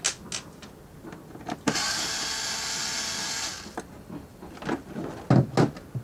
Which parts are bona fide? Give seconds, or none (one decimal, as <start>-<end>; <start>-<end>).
0.0-6.0